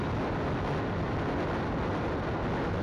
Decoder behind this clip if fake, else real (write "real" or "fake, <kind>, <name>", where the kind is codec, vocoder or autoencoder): real